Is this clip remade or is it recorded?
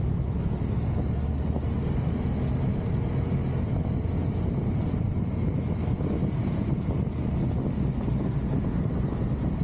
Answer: recorded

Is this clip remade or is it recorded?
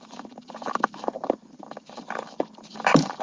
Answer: remade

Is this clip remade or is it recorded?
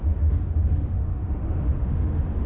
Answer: remade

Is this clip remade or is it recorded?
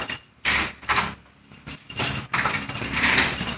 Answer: recorded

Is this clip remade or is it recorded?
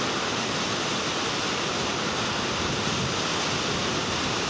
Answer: recorded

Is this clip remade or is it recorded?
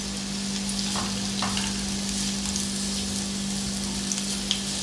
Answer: recorded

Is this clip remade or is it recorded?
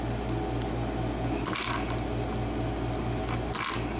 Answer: recorded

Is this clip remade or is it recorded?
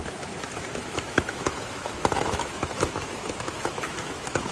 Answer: remade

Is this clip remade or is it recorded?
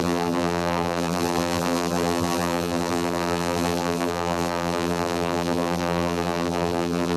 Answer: remade